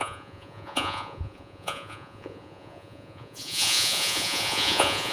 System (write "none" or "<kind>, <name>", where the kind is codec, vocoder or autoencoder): vocoder, Vocos